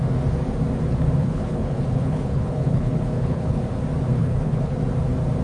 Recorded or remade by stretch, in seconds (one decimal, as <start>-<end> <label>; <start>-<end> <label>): 0.0-1.2 recorded; 1.2-3.6 remade; 3.6-4.2 recorded; 4.2-4.8 remade; 4.8-5.4 recorded